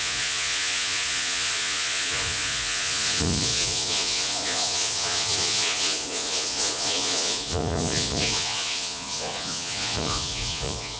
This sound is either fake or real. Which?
fake